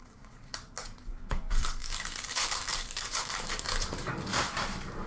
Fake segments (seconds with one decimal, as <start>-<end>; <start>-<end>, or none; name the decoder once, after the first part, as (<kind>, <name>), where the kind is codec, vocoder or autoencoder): 0.0-0.5 (codec, DAC); 1.1-4.1

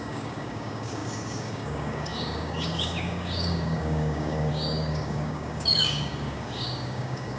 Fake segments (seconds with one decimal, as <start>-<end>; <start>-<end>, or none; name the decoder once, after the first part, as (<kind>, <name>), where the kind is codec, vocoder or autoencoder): 0.0-7.4 (codec, DAC)

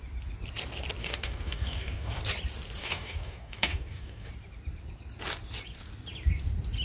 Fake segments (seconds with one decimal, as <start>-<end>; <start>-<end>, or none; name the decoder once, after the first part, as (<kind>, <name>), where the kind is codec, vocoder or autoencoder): 1.0-2.2 (codec, DAC); 2.8-4.3